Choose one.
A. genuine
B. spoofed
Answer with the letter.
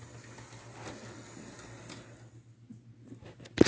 A